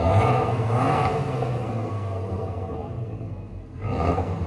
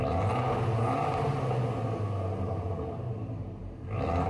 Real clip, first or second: second